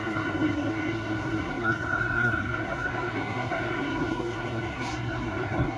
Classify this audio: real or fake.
fake